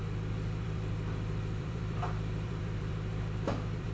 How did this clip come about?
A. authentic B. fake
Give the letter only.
B